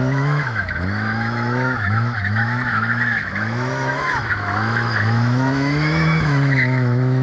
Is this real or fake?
fake